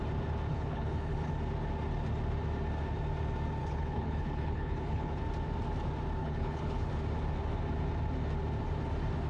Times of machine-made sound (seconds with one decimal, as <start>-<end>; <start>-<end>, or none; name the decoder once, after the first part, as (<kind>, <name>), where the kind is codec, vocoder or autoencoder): 0.5-1.3 (codec, HILCodec); 3.6-5.2; 6.2-6.9